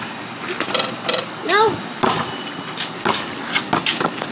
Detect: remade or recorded recorded